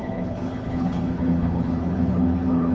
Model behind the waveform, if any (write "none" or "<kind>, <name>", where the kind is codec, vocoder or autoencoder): codec, HILCodec